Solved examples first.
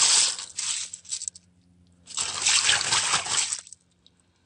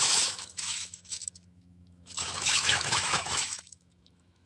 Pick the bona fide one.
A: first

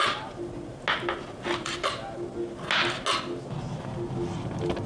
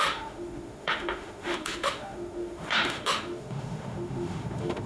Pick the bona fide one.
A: first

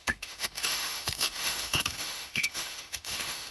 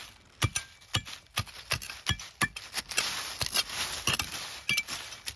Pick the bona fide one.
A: second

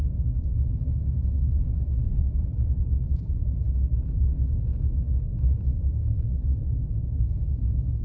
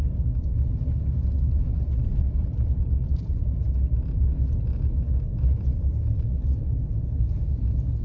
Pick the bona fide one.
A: second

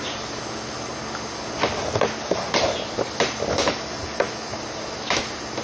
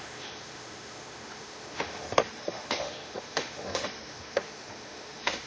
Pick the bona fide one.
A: first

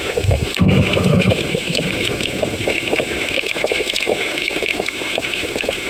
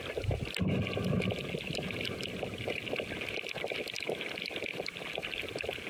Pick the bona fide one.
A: second